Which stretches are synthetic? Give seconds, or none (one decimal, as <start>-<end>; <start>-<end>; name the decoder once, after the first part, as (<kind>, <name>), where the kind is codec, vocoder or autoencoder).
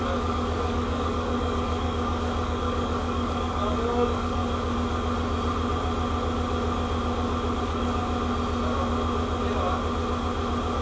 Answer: 0.0-4.4 (codec, DAC); 7.6-8.0